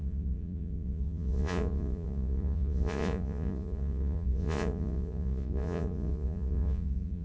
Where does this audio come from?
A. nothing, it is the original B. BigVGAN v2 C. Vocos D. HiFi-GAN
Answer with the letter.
C